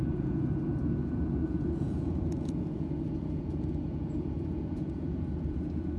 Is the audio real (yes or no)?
no